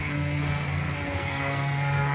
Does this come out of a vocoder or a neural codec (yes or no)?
yes